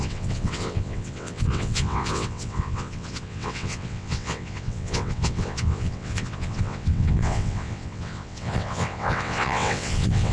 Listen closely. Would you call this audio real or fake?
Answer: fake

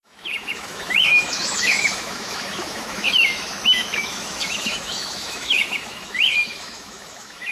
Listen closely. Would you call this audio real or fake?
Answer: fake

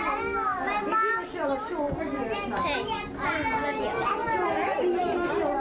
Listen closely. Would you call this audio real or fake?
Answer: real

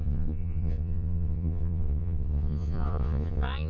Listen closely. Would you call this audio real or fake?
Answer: fake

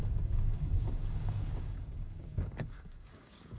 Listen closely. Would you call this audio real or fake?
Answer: fake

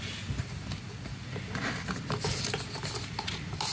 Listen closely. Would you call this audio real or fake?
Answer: real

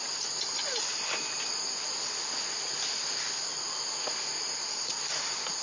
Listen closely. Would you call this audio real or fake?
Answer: real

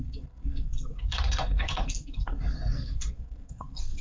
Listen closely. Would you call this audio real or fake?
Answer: fake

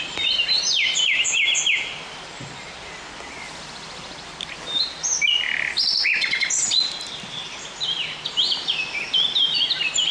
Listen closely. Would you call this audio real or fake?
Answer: fake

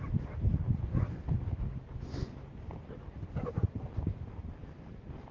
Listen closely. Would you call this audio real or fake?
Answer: real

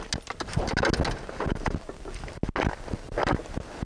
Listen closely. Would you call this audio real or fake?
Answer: real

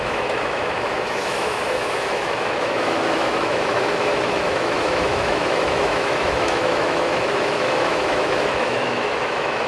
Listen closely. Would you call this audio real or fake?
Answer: fake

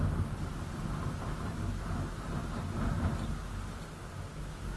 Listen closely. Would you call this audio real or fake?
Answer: real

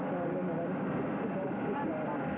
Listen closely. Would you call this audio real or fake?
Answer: real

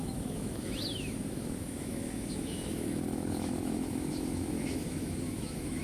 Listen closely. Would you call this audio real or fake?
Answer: fake